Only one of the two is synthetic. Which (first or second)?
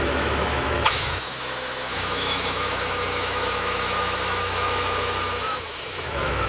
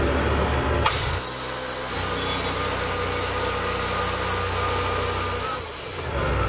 first